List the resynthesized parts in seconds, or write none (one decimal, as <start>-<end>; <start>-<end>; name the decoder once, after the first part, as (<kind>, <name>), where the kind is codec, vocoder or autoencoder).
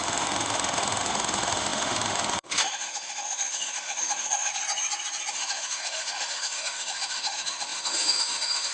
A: 0.0-4.5 (autoencoder, DAC-VAE); 5.3-8.7